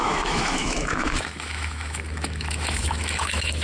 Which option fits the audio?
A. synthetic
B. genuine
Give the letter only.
A